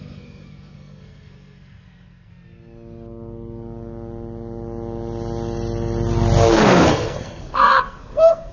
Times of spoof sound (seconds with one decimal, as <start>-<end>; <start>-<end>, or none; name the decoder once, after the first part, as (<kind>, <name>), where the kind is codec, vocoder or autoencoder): 0.0-2.3 (codec, SNAC); 6.5-8.5